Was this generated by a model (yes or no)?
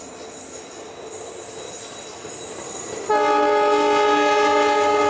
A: no